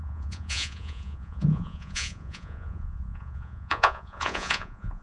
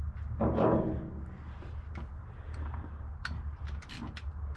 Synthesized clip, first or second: first